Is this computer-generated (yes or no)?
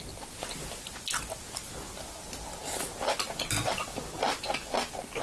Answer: no